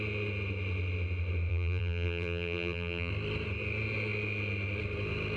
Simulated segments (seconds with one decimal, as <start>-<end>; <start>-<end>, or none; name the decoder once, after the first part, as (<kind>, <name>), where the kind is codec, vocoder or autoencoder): 1.5-3.1 (vocoder, BigVGAN v2)